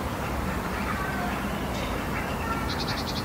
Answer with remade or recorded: remade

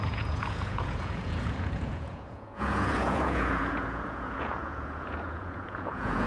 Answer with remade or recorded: remade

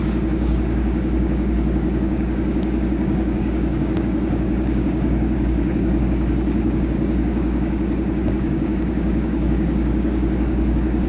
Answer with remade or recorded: remade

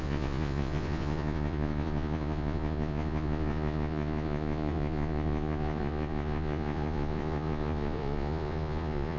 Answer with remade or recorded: remade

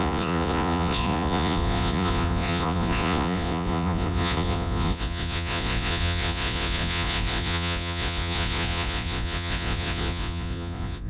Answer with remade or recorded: remade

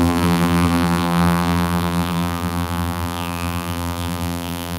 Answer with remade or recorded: remade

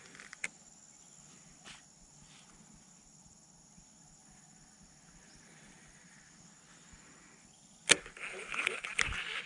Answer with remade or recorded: recorded